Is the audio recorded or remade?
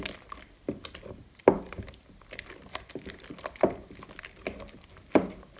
recorded